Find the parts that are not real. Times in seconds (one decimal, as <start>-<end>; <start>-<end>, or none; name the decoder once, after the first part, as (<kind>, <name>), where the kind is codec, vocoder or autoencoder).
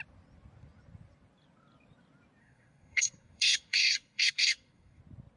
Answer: 2.4-5.0 (codec, SNAC)